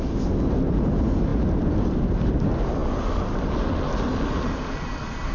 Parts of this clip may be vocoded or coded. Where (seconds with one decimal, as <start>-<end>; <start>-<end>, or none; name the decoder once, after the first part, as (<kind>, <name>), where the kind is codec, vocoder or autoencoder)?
none